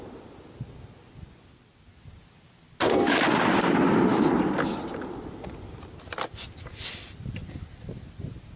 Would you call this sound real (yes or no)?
yes